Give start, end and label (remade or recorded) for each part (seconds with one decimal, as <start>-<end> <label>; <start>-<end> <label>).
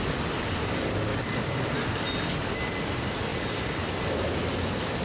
0.0-3.3 remade; 3.3-4.0 recorded; 4.0-5.0 remade